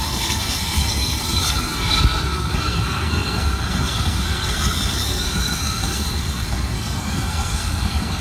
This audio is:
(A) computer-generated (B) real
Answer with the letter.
A